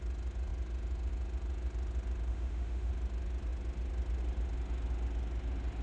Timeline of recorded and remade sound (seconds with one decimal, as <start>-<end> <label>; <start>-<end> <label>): 0.0-2.3 recorded; 2.3-2.9 remade; 2.9-5.8 recorded